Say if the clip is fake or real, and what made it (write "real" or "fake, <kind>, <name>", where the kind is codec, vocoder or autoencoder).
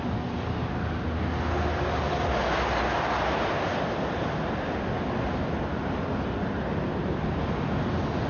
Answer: real